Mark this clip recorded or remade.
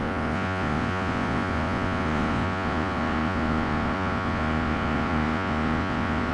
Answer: remade